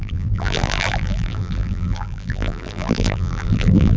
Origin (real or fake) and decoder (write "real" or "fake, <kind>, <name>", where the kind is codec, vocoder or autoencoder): fake, vocoder, BigVGAN v2